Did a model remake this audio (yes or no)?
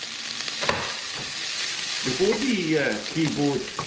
no